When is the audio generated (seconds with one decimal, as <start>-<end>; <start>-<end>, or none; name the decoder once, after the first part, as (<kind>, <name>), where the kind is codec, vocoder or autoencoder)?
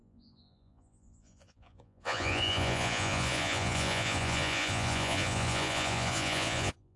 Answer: 0.0-7.0 (vocoder, Vocos)